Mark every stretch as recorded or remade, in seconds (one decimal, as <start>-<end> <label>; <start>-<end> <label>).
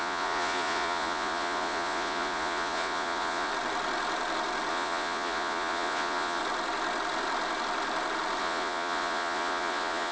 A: 0.0-3.5 remade; 3.5-4.7 recorded; 4.7-6.4 remade; 6.4-8.4 recorded; 8.4-10.1 remade